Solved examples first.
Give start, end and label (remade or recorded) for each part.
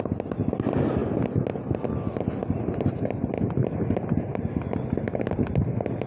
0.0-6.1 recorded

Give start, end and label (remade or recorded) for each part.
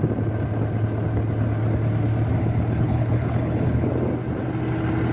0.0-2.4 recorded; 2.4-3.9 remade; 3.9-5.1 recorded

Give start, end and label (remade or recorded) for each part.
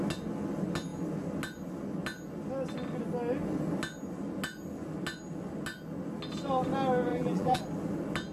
0.0-7.1 recorded; 7.1-7.6 remade; 7.6-8.3 recorded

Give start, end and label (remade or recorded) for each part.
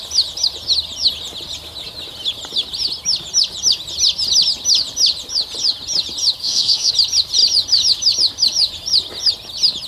0.0-6.4 recorded; 6.4-6.9 remade; 6.9-9.9 recorded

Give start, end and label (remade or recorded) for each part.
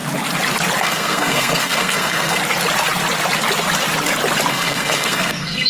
0.0-0.8 recorded; 0.8-2.4 remade; 2.4-4.5 recorded; 4.5-5.7 remade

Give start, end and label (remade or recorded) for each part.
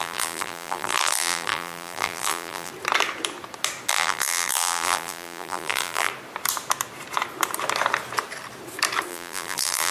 0.0-2.7 remade; 2.7-3.9 recorded; 3.9-6.1 remade; 6.1-9.1 recorded; 9.1-9.9 remade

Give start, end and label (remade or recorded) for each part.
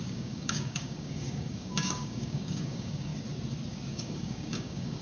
0.0-3.1 remade; 3.1-3.7 recorded; 3.7-5.0 remade